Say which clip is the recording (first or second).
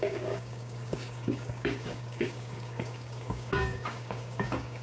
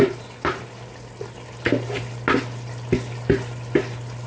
second